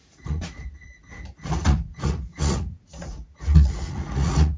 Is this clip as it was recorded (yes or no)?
no